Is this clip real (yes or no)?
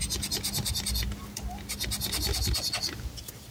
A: no